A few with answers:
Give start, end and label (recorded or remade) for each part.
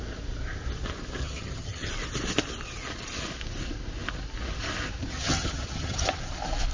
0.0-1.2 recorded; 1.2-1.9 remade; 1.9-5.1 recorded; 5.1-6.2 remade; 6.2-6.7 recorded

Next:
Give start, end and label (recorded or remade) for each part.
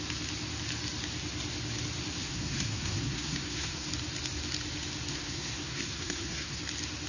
0.0-2.2 recorded; 2.2-3.9 remade; 3.9-5.1 recorded; 5.1-6.6 remade; 6.6-7.1 recorded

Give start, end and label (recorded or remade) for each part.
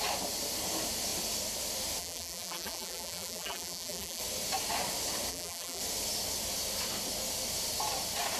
0.0-2.0 recorded; 2.0-4.2 remade; 4.2-5.3 recorded; 5.3-5.8 remade; 5.8-8.4 recorded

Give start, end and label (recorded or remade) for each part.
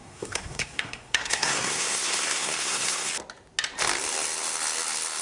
0.0-3.1 remade; 3.1-5.2 recorded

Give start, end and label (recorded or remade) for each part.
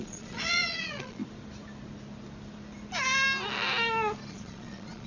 0.0-1.2 remade; 1.2-4.3 recorded; 4.3-5.1 remade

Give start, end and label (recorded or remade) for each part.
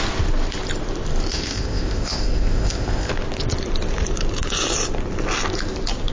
0.0-1.3 recorded; 1.3-3.1 remade; 3.1-6.1 recorded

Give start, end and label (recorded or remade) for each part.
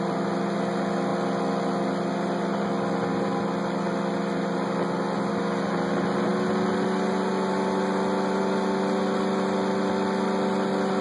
0.0-11.0 recorded